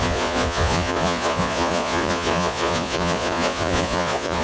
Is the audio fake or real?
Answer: fake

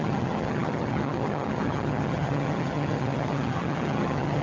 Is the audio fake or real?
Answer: fake